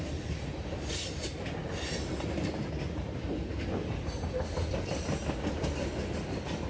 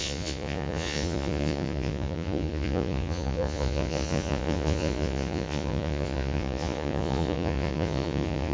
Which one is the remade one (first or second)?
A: second